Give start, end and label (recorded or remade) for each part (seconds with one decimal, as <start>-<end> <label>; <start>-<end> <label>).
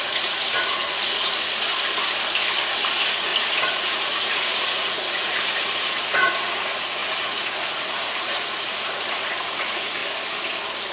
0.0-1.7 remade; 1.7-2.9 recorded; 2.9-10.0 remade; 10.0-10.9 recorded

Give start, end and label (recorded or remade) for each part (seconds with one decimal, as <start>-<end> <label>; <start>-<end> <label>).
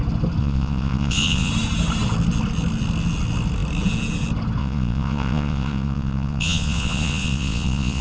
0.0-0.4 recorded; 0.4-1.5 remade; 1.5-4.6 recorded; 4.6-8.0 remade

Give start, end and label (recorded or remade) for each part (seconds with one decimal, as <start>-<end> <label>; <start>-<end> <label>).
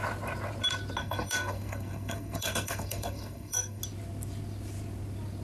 0.0-1.0 recorded; 1.0-3.8 remade; 3.8-5.4 recorded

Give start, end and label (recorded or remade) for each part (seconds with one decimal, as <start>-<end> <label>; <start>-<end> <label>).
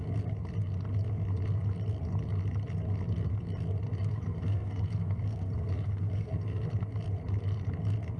0.0-4.1 recorded; 4.1-6.7 remade; 6.7-8.2 recorded